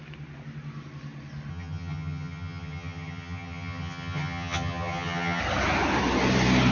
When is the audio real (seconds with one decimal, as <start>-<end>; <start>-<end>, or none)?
0.0-1.5; 5.4-6.7